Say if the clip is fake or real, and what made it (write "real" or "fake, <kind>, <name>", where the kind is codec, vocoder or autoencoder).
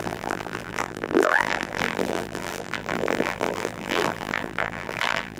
fake, vocoder, BigVGAN v2